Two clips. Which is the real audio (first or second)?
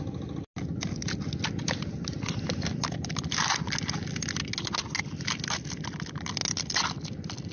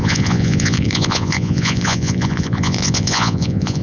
first